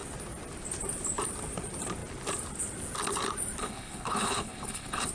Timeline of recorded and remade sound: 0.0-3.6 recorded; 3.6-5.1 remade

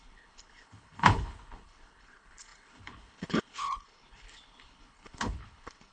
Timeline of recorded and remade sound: 0.0-5.9 remade